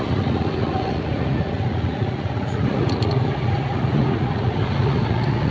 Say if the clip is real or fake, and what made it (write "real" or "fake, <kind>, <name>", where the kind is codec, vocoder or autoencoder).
fake, vocoder, Vocos